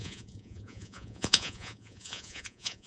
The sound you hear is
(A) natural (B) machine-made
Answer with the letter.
B